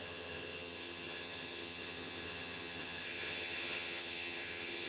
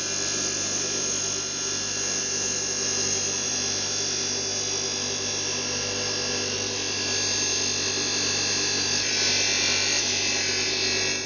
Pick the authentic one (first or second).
second